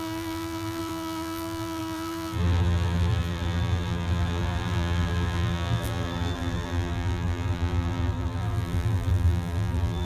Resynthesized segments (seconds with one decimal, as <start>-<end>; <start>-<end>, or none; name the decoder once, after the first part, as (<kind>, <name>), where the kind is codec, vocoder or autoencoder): 0.0-10.0 (vocoder, BigVGAN v2)